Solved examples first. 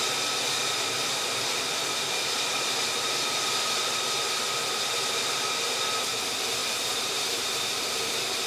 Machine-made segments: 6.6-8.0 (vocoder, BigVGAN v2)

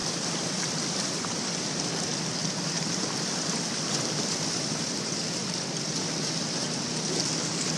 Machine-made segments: 0.0-1.9 (vocoder, BigVGAN v2); 2.4-6.3

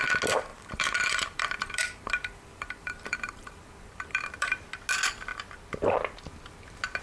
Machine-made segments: 0.5-4.7 (vocoder, BigVGAN v2)

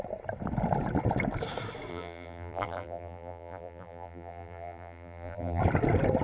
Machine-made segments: 1.9-5.6 (vocoder, BigVGAN v2)

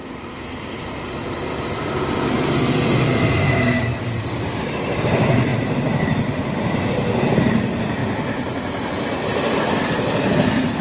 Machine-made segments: 0.0-5.5 (vocoder, BigVGAN v2); 7.3-8.0; 9.0-10.8

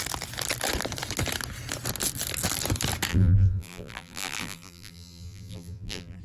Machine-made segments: 3.1-6.2 (vocoder, BigVGAN v2)

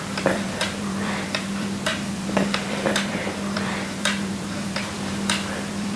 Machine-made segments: 0.0-6.0 (vocoder, BigVGAN v2)